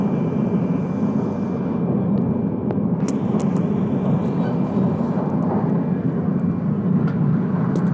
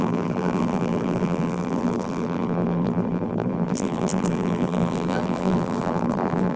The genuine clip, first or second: first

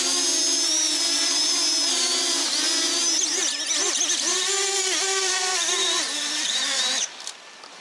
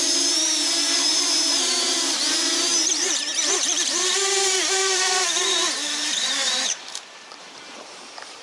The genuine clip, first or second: first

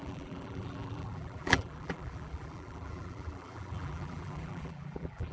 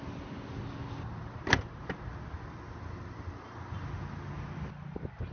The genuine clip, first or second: second